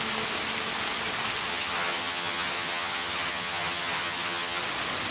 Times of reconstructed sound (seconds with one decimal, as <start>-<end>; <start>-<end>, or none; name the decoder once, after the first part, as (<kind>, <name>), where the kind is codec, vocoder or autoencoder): 1.5-4.6 (vocoder, HiFi-GAN)